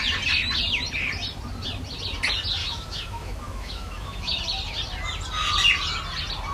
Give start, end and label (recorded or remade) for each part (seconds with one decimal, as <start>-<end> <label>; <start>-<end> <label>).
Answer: 0.0-2.6 recorded; 2.6-4.4 remade; 4.4-6.5 recorded